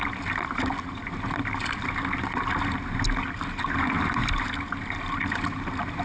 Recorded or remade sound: recorded